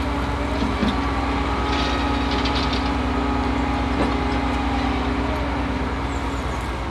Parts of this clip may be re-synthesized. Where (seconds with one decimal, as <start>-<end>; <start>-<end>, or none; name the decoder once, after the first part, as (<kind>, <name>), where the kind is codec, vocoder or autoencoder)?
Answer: none